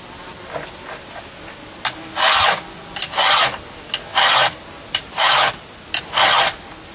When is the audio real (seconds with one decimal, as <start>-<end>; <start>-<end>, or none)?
0.0-6.9